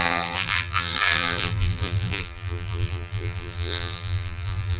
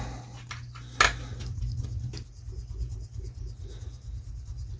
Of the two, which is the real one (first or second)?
second